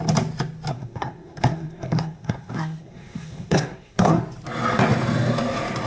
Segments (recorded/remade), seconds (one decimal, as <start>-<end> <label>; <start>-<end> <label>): 0.0-0.7 recorded; 0.7-4.2 remade; 4.2-5.9 recorded